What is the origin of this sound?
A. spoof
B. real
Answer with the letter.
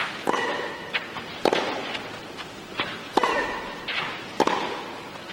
B